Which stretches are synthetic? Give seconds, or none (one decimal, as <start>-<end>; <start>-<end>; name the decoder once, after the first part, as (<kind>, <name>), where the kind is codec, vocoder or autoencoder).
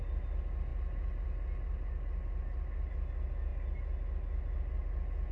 none